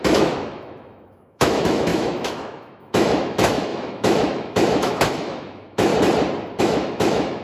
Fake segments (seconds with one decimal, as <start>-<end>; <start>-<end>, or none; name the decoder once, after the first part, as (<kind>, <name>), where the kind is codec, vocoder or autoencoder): 0.0-5.9 (autoencoder, DAC-VAE); 6.6-7.4